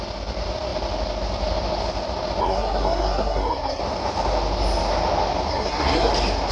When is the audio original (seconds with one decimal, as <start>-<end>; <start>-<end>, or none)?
0.0-2.4; 3.8-5.5; 6.1-6.5